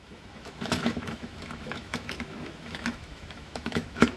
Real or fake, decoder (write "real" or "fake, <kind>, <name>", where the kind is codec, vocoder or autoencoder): fake, autoencoder, DAC-VAE